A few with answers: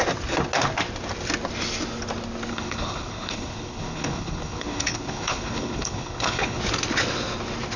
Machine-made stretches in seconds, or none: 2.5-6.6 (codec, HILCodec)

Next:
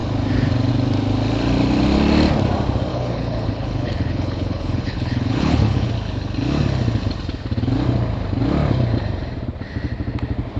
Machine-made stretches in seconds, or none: 2.9-5.9 (codec, HILCodec)

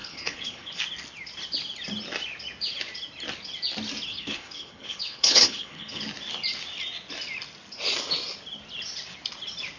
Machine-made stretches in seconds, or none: 0.0-0.8 (codec, HILCodec); 4.1-6.0